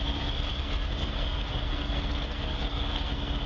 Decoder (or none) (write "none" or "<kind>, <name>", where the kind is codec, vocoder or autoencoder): codec, SNAC